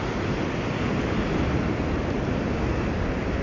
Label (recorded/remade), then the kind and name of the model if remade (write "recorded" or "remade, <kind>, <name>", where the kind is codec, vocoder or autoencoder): recorded